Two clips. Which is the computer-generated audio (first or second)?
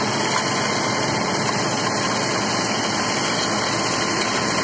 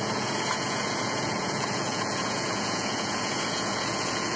second